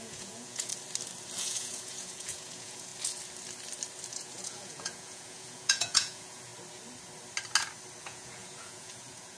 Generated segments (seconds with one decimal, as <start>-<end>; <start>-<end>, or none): 0.0-0.7; 1.4-2.9; 4.1-6.5; 8.0-9.4